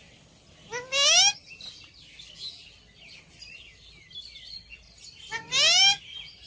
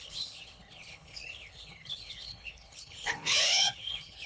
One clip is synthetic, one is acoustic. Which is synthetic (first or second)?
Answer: second